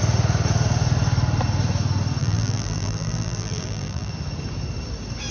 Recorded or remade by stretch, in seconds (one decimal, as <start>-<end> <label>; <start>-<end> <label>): 0.0-2.2 recorded; 2.2-4.1 remade; 4.1-5.3 recorded